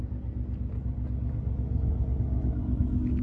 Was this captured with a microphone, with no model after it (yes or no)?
yes